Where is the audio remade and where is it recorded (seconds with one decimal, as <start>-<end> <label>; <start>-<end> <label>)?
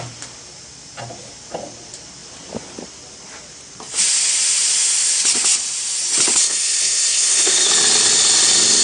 0.0-6.4 recorded; 6.4-7.7 remade; 7.7-8.8 recorded